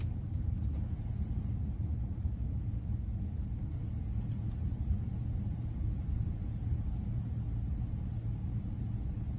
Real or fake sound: real